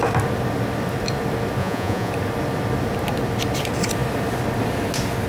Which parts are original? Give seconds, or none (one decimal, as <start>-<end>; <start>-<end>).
0.0-1.6; 2.1-5.3